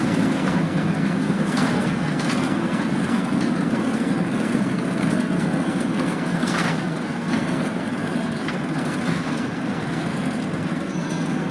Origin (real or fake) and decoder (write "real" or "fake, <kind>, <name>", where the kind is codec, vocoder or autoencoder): fake, codec, SNAC